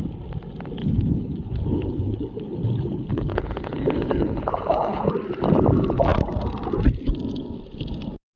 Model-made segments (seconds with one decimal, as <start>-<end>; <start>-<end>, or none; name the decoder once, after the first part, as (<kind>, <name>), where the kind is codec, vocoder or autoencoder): 0.8-5.1 (codec, HILCodec)